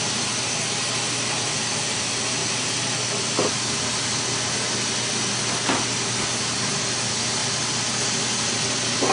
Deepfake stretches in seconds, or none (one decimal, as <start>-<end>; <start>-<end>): none